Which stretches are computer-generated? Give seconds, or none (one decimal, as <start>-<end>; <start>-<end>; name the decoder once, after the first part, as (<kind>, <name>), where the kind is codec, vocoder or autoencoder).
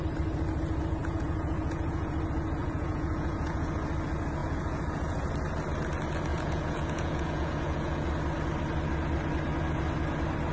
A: 1.0-2.2 (vocoder, Vocos); 2.6-3.7; 4.4-5.3; 6.3-8.1